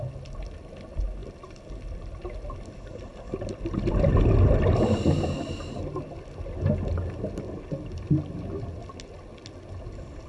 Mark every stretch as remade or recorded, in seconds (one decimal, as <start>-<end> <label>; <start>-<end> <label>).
0.0-10.3 recorded